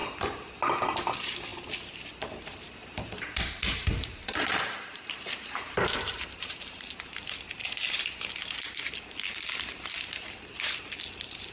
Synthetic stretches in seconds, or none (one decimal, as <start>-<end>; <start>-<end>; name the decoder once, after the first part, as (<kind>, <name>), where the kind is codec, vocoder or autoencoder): 3.8-6.9 (vocoder, BigVGAN v2)